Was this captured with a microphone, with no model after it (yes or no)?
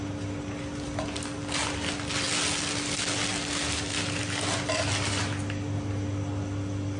yes